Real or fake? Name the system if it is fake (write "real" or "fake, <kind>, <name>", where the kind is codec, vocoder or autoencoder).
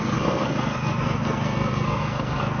fake, codec, SNAC